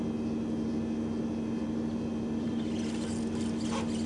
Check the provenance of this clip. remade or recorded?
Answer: remade